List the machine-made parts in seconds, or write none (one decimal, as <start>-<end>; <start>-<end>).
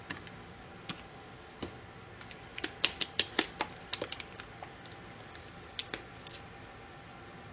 2.5-4.4; 5.8-6.8